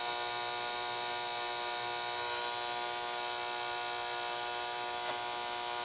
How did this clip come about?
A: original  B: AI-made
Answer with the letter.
A